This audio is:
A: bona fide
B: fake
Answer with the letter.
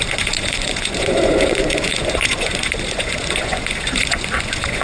B